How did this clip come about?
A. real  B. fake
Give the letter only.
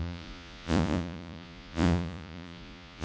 B